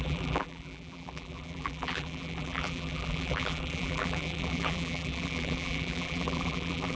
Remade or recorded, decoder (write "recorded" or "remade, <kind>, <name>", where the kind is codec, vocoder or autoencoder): remade, vocoder, BigVGAN v2